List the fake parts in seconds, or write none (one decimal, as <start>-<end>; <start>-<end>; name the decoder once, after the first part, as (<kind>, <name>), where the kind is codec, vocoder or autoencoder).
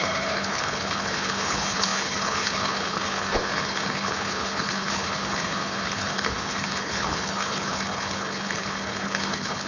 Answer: 0.0-9.7 (codec, HILCodec)